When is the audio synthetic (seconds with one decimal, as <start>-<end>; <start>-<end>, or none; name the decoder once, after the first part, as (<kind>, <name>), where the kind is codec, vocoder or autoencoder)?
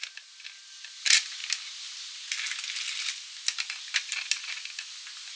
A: none